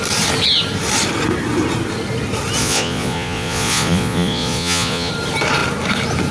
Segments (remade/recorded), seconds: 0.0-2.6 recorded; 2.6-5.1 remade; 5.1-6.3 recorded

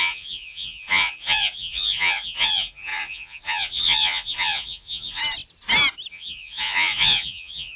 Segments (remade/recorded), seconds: 0.0-5.2 remade; 5.2-6.1 recorded; 6.1-7.8 remade

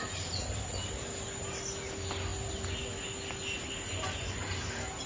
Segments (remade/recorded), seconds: 0.0-3.9 recorded; 3.9-4.4 remade; 4.4-5.1 recorded

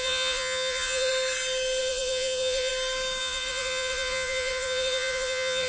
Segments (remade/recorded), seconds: 0.0-1.1 remade; 1.1-1.8 recorded; 1.8-2.7 remade; 2.7-3.2 recorded; 3.2-5.7 remade

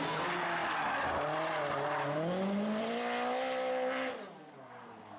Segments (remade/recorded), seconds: 0.0-5.2 recorded